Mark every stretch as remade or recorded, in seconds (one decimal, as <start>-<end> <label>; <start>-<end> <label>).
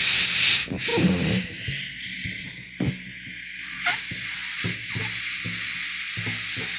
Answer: 0.0-6.8 recorded